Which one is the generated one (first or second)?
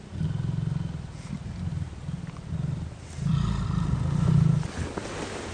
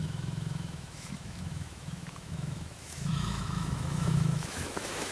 second